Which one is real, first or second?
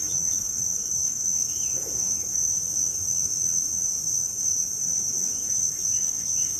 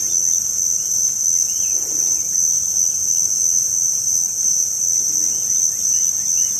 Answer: second